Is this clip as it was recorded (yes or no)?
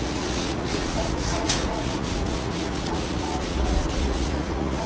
no